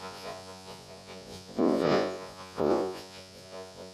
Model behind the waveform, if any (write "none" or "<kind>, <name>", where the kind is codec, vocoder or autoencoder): vocoder, Vocos